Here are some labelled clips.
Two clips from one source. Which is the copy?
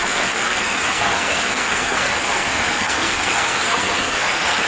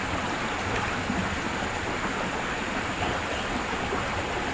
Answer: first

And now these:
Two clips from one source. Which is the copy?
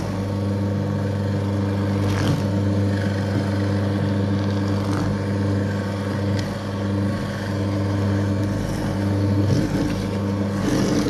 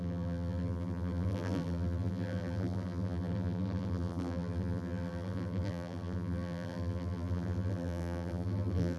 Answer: second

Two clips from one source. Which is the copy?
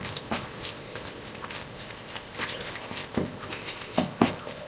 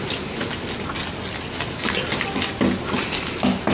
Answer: first